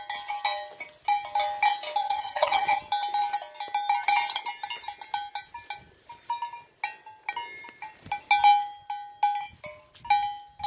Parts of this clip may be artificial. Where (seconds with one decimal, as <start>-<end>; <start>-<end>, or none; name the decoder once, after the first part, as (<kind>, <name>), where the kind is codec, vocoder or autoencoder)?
2.0-2.8 (vocoder, HiFi-GAN)